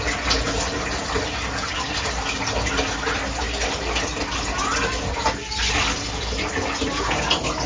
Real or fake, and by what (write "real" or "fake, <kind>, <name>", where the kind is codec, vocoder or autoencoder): real